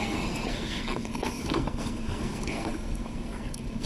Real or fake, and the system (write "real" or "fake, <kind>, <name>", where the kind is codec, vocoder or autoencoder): fake, codec, SNAC